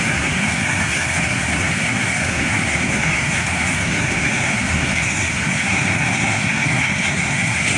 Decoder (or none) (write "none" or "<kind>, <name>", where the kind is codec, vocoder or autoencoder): codec, SNAC